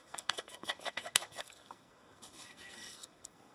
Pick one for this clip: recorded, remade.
remade